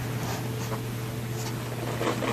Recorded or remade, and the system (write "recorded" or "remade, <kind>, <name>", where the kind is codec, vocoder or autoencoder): recorded